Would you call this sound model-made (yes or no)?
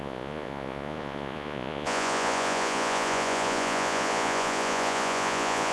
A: yes